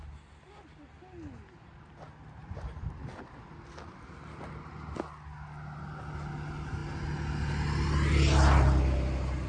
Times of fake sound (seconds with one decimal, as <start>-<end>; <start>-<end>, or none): none